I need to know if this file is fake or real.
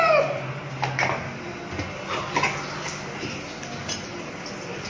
real